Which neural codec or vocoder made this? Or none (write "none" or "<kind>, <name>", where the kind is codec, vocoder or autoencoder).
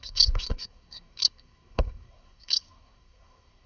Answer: codec, SNAC